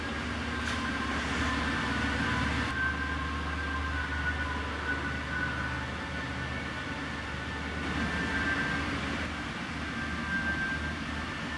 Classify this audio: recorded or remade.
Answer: recorded